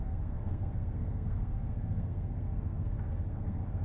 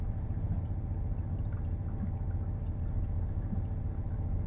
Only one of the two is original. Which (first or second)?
second